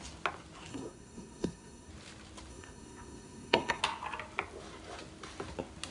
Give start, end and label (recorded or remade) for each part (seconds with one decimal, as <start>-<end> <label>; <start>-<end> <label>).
0.0-0.7 recorded; 0.7-1.9 remade; 1.9-2.5 recorded; 2.5-3.8 remade; 3.8-5.9 recorded